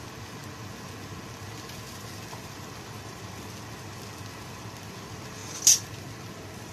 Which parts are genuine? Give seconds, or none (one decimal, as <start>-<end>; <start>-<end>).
0.0-6.7